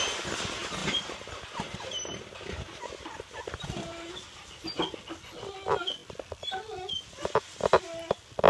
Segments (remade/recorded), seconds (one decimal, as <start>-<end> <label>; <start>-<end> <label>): 0.0-0.8 recorded; 0.8-4.1 remade; 4.1-8.5 recorded